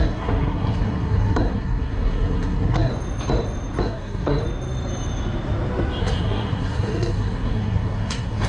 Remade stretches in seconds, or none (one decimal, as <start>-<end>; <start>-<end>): 0.0-2.9; 3.8-4.4; 6.0-8.5